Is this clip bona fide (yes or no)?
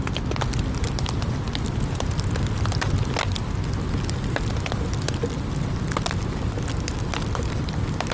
yes